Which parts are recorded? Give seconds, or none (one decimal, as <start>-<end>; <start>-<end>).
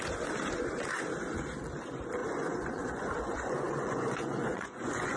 0.0-2.2